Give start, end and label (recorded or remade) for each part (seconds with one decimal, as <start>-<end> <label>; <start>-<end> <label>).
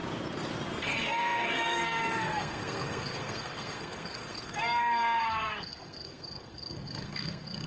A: 0.0-0.8 recorded; 0.8-7.7 remade